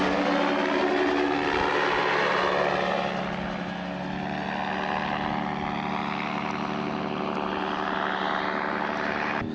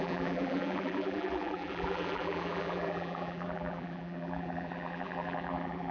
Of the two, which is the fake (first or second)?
second